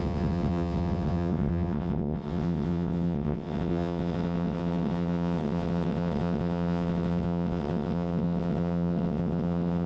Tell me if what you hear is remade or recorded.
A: remade